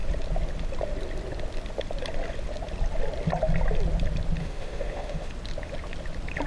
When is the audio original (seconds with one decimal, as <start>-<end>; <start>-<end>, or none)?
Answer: 0.0-4.4; 5.3-6.5